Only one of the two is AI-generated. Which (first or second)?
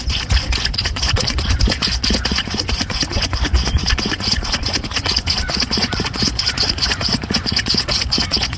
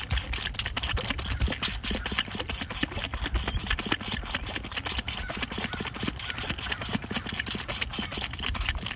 first